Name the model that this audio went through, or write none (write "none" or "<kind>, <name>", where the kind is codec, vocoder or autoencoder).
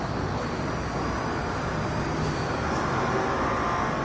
none